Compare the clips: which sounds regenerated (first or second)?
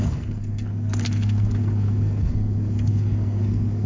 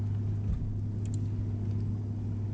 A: first